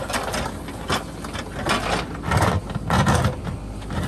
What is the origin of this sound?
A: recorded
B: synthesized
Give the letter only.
A